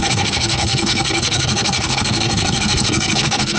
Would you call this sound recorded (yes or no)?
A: no